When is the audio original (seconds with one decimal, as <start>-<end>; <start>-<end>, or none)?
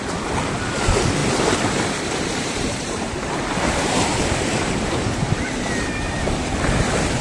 0.0-1.2; 5.4-7.2